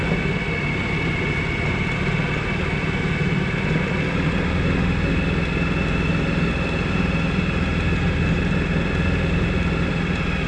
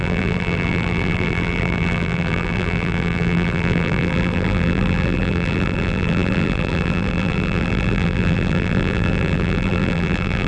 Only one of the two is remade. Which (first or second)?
second